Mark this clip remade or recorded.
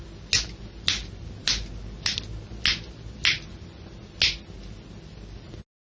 recorded